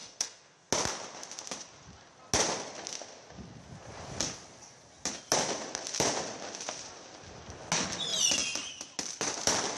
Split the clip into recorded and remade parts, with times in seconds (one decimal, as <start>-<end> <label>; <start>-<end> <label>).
0.0-0.7 remade; 0.7-9.8 recorded